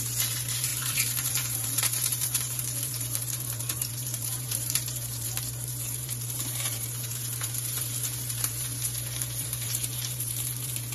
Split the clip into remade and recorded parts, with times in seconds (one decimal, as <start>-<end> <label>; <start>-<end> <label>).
0.0-10.9 remade